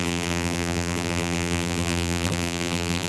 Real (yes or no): no